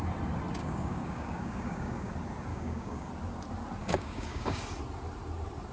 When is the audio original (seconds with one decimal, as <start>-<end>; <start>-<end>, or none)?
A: 0.0-0.6; 2.1-2.5; 3.1-3.8; 4.6-5.7